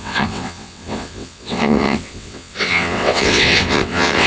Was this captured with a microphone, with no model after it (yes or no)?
no